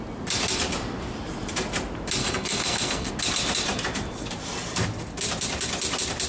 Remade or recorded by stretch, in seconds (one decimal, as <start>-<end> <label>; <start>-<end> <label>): 0.0-2.2 recorded; 2.2-3.1 remade; 3.1-6.3 recorded